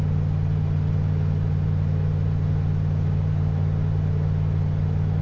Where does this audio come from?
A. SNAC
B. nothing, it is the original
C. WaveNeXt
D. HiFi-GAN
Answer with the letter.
B